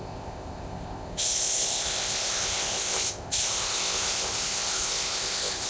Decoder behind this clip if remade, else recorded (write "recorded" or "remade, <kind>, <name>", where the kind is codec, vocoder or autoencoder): remade, codec, ZipCodec